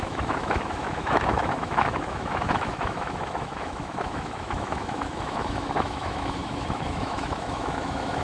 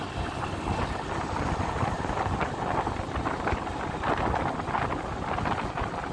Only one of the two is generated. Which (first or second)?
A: first